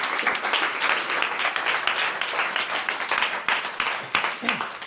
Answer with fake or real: real